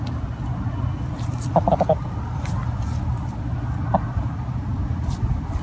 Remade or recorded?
recorded